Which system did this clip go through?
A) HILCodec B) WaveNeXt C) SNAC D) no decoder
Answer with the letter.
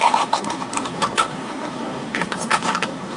C